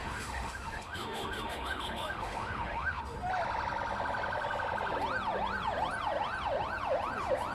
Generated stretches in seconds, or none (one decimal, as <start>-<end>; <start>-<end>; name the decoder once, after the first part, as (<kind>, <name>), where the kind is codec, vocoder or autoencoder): 0.0-3.0 (autoencoder, DAC-VAE)